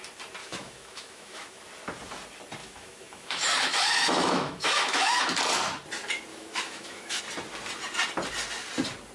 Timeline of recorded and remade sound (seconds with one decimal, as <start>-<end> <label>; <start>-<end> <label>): 0.0-0.4 recorded; 0.4-1.6 remade; 1.6-2.6 recorded; 2.6-5.2 remade; 5.2-6.3 recorded; 6.3-7.2 remade; 7.2-9.1 recorded